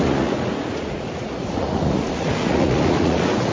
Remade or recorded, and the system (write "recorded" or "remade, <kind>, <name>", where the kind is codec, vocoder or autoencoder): remade, vocoder, Vocos